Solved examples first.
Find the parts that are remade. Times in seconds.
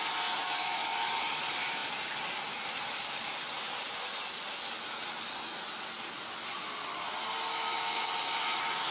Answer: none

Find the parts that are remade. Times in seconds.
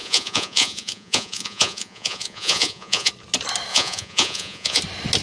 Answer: 0.0-3.1 (vocoder, Vocos); 3.7-4.8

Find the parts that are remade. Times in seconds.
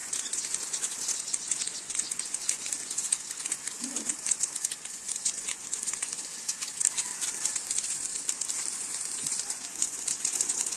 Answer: 0.0-6.8 (vocoder, Vocos); 8.7-10.8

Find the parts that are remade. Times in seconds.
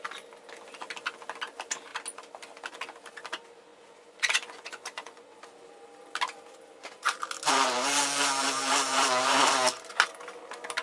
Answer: 3.7-5.4 (vocoder, Vocos)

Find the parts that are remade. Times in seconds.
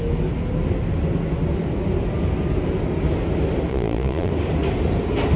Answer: 3.7-4.3 (vocoder, Vocos)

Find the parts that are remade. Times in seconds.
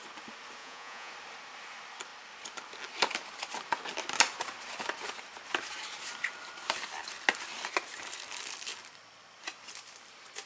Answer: 0.6-1.1 (vocoder, Vocos)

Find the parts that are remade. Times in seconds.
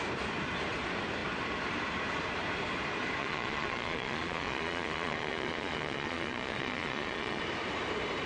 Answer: 3.2-7.4 (vocoder, Vocos)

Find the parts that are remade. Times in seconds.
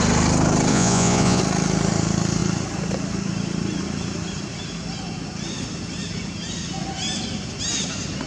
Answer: 0.7-1.4 (vocoder, Vocos)